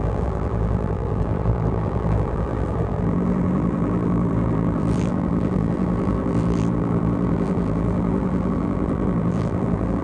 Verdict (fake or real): fake